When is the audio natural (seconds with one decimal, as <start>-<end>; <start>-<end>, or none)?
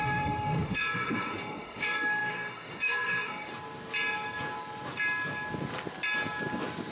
3.5-6.9